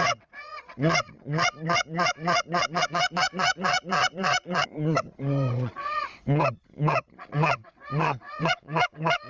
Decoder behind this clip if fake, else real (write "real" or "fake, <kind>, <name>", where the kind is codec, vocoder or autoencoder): fake, vocoder, Vocos